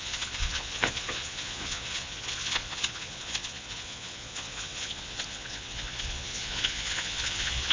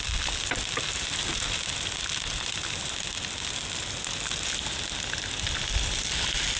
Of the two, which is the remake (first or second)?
first